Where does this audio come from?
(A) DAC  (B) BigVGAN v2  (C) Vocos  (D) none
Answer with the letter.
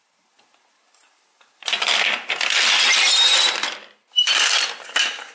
D